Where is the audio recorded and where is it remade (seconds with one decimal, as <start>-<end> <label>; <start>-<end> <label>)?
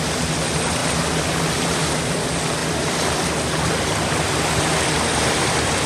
0.0-0.8 recorded; 0.8-2.2 remade; 2.2-2.6 recorded; 2.6-5.9 remade